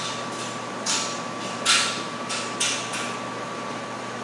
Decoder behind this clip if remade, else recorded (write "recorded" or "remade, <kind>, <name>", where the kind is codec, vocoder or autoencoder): recorded